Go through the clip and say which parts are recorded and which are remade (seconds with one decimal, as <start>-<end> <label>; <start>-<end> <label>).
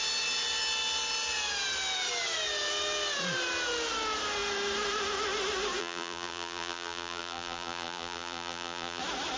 0.0-5.8 recorded; 5.8-9.0 remade; 9.0-9.4 recorded